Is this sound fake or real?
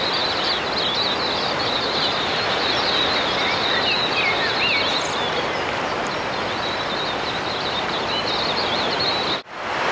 real